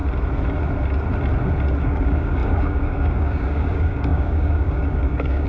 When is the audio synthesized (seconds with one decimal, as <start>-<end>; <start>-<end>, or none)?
1.8-5.5